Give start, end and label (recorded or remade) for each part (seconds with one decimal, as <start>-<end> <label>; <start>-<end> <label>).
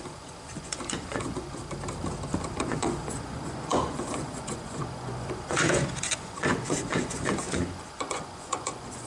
0.0-1.6 remade; 1.6-2.5 recorded; 2.5-9.1 remade